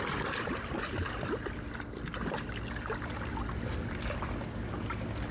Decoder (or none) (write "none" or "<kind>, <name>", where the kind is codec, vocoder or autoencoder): none